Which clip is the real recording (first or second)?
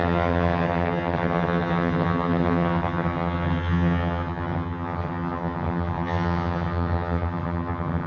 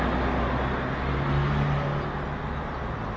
second